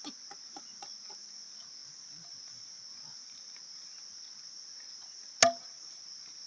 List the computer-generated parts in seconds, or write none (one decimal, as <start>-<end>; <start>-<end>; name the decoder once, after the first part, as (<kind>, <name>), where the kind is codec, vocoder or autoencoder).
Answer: none